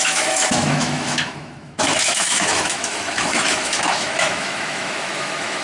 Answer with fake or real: fake